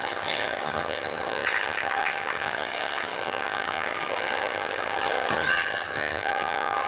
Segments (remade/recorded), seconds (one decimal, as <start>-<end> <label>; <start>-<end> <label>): 0.0-6.9 remade